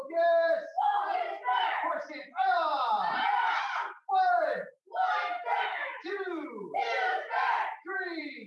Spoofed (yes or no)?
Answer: yes